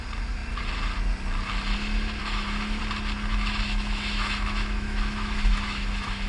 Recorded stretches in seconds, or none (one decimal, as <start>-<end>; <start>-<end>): 0.0-2.2; 2.8-3.3